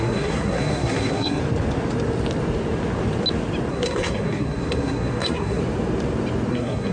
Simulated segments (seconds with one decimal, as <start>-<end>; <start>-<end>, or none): 0.0-1.4; 3.7-5.6; 6.5-6.9